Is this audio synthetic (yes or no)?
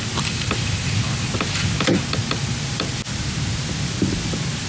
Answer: no